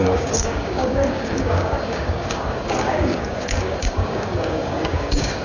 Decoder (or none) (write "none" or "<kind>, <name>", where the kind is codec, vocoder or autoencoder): codec, DAC